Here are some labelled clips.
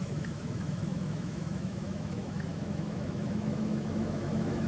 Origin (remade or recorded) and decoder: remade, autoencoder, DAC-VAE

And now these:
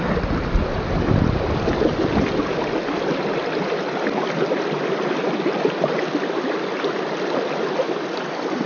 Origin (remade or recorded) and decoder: recorded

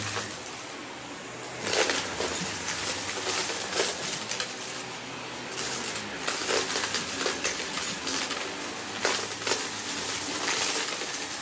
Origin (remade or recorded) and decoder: recorded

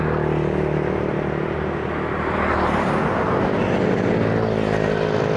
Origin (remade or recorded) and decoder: recorded